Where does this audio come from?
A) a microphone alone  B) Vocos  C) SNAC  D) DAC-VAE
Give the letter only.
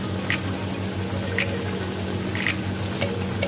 A